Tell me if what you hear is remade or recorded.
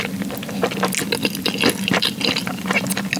recorded